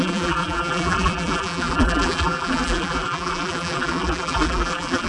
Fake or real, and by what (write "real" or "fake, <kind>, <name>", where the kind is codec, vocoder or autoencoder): fake, vocoder, BigVGAN v2